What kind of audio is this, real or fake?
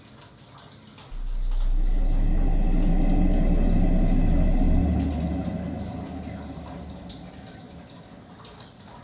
real